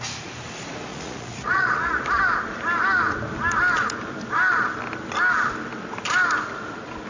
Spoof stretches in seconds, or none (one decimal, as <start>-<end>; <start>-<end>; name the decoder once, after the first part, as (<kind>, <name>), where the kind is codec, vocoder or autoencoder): 0.9-2.0 (vocoder, Vocos)